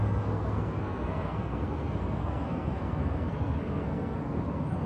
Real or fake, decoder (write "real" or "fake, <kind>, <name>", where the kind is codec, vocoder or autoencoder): fake, codec, SNAC